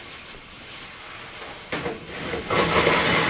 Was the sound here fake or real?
real